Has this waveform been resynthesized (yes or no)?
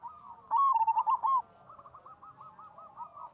no